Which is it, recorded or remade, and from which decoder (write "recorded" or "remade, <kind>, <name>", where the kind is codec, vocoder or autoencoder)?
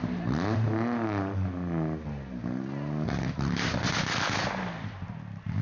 recorded